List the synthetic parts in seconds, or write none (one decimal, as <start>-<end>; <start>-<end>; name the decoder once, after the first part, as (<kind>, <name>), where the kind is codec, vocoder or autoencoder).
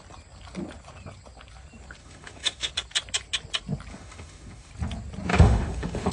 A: 2.0-2.7 (autoencoder, DAC-VAE); 3.9-4.7; 5.3-6.1